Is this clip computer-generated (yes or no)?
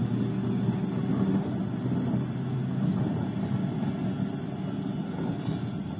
no